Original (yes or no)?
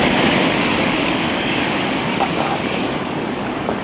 no